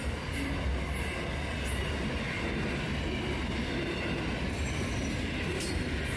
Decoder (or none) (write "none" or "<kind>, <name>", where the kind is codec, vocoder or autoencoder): none